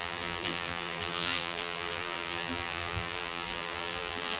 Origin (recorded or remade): remade